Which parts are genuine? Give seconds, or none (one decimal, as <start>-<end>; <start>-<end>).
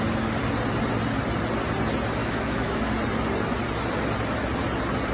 0.0-2.2; 2.9-5.1